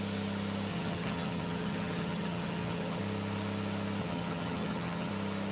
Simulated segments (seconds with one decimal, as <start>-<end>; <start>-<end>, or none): 0.7-3.0; 4.0-5.1